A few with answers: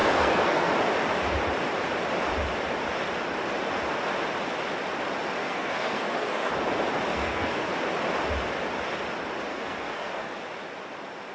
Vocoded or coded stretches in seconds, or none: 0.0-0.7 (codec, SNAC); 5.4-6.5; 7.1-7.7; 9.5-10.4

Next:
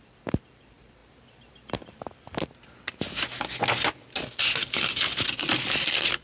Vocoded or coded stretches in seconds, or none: none